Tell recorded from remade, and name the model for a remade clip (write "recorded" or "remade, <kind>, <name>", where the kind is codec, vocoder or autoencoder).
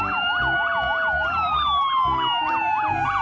recorded